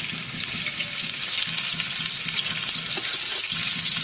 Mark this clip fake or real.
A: real